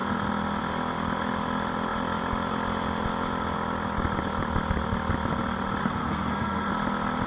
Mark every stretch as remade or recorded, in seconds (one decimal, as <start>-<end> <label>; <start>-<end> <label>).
0.0-5.8 recorded; 5.8-6.7 remade; 6.7-7.3 recorded